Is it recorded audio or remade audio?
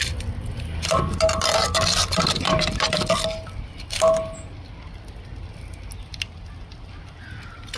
recorded